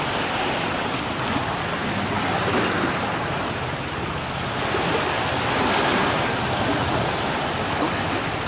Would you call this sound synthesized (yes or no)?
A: no